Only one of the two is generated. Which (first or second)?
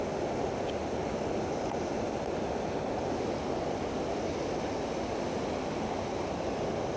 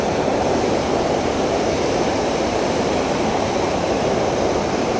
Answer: second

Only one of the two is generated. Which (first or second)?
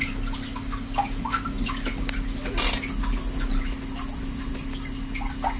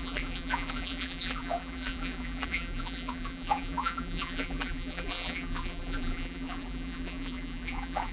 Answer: second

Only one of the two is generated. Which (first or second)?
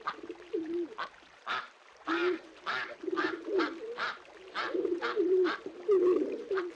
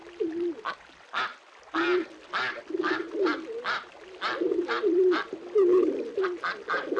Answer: first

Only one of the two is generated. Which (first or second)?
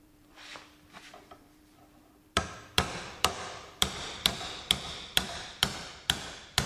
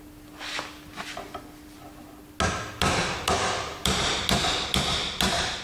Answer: first